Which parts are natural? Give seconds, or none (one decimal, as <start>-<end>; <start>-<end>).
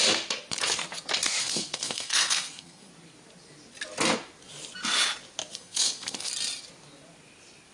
0.0-1.4; 2.9-5.5; 6.3-7.7